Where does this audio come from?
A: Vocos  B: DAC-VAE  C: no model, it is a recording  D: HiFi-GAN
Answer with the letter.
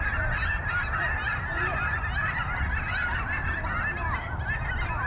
C